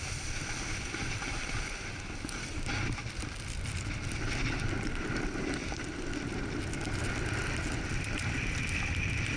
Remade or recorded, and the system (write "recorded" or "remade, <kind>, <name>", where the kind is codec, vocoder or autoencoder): recorded